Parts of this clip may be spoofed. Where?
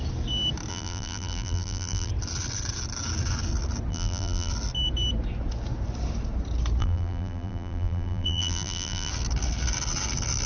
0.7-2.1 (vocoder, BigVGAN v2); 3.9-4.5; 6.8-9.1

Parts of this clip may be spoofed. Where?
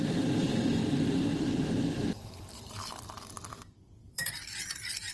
0.0-5.1 (vocoder, BigVGAN v2)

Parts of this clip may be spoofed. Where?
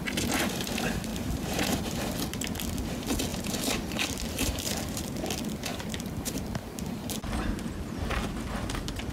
1.1-2.0 (vocoder, BigVGAN v2); 3.3-5.3; 5.7-6.4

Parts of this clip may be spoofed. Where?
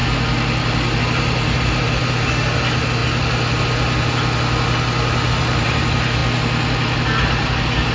1.0-3.0 (vocoder, BigVGAN v2); 5.3-6.2; 7.2-7.9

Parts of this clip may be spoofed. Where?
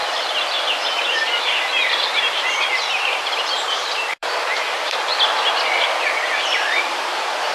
1.4-5.1 (vocoder, BigVGAN v2); 6.8-7.5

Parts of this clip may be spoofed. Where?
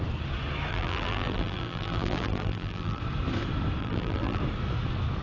0.7-3.0 (vocoder, BigVGAN v2); 3.8-4.4